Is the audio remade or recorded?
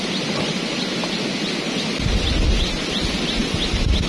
recorded